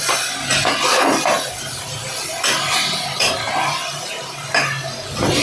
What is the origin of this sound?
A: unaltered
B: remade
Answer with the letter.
A